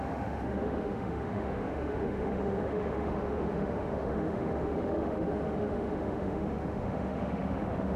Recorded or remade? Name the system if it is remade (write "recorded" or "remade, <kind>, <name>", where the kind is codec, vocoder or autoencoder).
remade, autoencoder, DAC-VAE